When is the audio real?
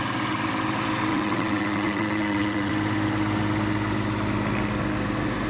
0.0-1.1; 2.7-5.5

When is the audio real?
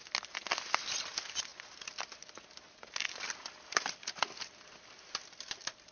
0.0-5.9